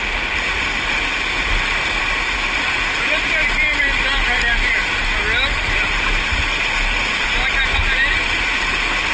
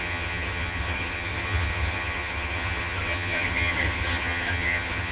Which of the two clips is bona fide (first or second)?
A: first